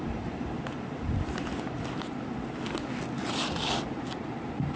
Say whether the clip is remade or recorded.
recorded